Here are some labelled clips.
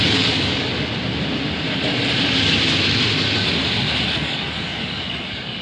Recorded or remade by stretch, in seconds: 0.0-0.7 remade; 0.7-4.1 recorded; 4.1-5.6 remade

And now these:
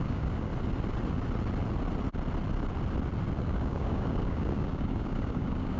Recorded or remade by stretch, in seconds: 0.0-0.5 remade; 0.5-3.4 recorded; 3.4-5.8 remade

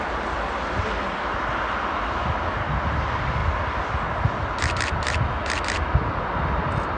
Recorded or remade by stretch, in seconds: 0.0-7.0 recorded

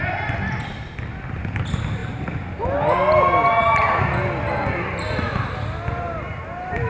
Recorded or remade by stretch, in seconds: 0.0-6.9 recorded

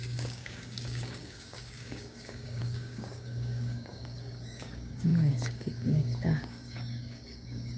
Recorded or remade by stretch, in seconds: 0.0-7.8 remade

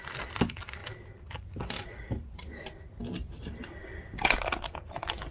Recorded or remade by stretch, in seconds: 0.0-5.3 recorded

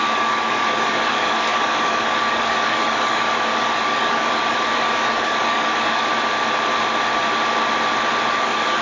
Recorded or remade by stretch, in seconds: 0.0-6.1 remade; 6.1-8.3 recorded; 8.3-8.8 remade

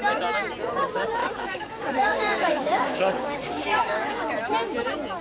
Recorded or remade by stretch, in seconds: 0.0-1.2 recorded; 1.2-4.3 remade; 4.3-5.2 recorded